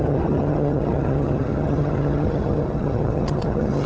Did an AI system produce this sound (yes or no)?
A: yes